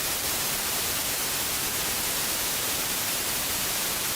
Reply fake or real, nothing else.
fake